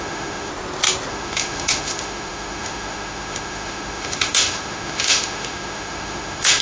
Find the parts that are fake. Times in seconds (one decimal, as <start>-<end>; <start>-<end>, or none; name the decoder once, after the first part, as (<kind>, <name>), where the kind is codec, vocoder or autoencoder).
0.0-0.5 (autoencoder, DAC-VAE); 1.1-6.6